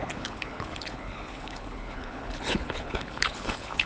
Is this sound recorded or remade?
remade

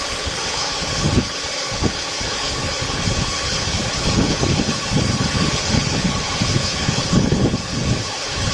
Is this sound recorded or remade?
remade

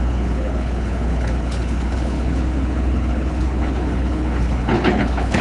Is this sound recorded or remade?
remade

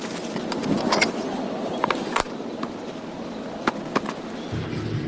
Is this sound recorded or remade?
recorded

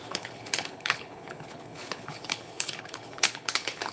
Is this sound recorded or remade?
remade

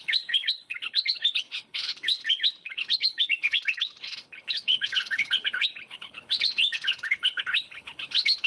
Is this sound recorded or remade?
remade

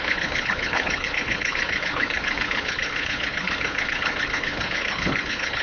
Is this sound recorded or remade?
remade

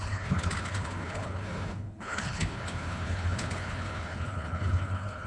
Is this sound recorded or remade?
remade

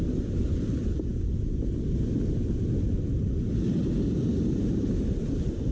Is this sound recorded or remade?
recorded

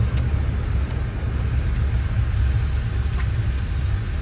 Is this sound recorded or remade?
recorded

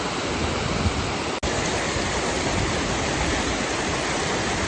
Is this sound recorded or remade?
recorded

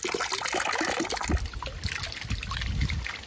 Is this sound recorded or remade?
recorded